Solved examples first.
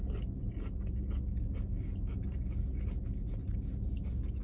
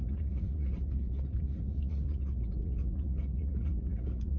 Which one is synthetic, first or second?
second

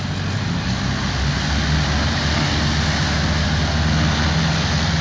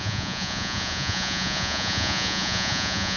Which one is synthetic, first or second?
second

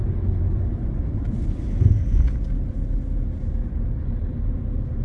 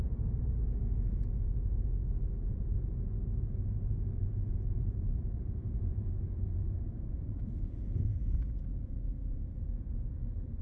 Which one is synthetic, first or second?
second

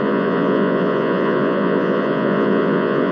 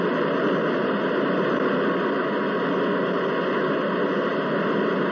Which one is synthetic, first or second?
first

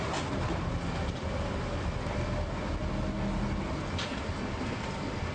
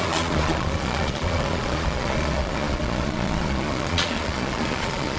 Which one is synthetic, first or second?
second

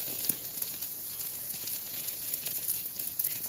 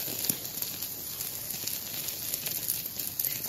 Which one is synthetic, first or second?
first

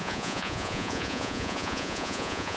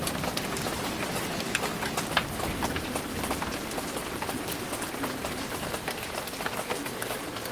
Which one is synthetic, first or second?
first